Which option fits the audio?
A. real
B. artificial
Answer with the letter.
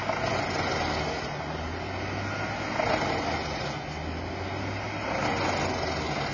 A